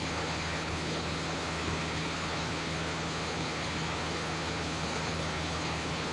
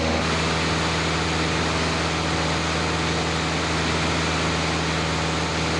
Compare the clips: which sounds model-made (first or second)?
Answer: first